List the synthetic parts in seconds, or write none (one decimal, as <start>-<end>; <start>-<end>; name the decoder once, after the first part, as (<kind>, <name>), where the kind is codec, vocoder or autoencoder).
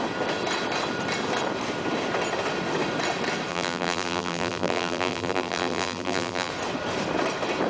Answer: 3.5-6.5 (vocoder, BigVGAN v2)